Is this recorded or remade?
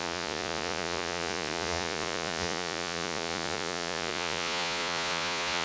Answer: remade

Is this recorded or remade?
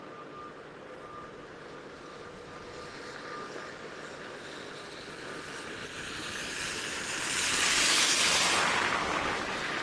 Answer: recorded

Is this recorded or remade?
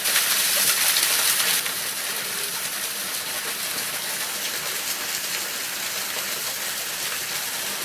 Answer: recorded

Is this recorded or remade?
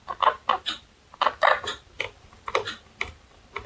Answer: recorded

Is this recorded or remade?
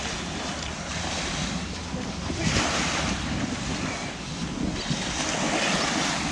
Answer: recorded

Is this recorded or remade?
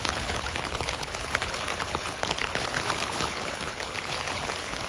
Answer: remade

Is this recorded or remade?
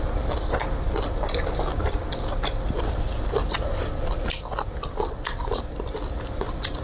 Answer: recorded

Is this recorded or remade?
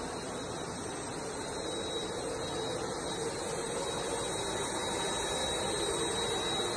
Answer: recorded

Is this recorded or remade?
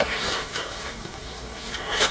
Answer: remade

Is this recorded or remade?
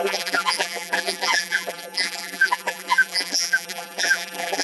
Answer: remade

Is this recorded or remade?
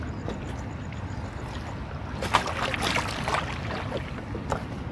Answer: recorded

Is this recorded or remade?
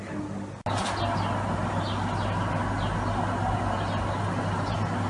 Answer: recorded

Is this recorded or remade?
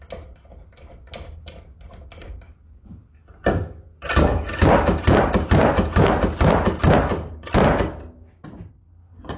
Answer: recorded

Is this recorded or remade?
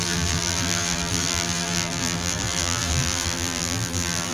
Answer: remade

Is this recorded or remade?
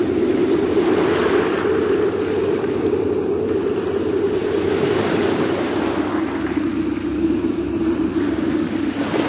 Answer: recorded